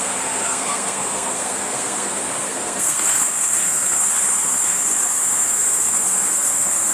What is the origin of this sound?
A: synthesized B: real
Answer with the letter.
A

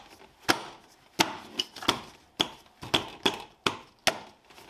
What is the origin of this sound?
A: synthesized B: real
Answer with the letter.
B